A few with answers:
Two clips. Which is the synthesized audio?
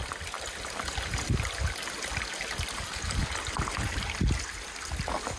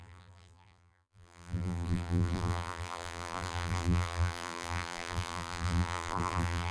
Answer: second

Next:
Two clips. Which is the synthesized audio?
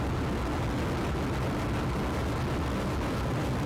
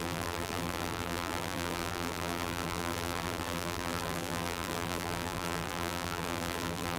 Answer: second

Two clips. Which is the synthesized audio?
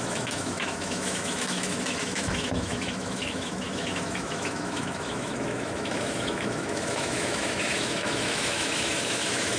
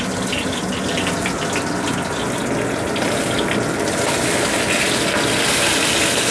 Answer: first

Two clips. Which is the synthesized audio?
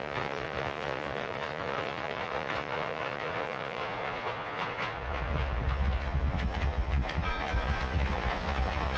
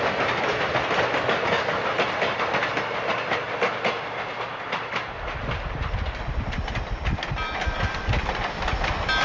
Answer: first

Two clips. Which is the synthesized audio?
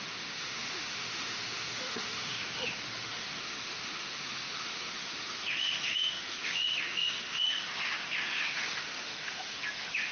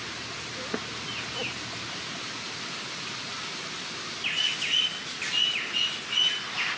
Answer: first